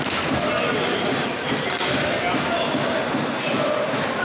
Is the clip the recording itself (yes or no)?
yes